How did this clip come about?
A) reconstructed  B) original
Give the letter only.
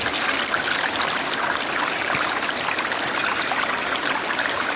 B